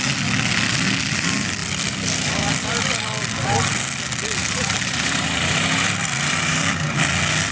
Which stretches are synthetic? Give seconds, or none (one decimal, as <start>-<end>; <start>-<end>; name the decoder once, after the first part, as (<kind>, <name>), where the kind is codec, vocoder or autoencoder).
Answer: 4.4-6.6 (vocoder, BigVGAN v2)